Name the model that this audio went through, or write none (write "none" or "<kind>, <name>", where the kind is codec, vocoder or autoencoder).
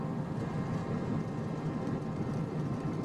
none